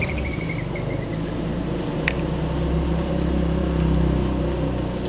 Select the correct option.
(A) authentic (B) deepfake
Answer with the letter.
A